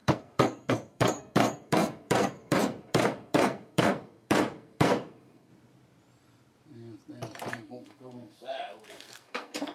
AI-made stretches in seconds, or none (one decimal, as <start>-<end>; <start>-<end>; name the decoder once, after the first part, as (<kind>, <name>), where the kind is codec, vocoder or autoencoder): 0.0-5.5 (codec, SNAC); 7.5-9.7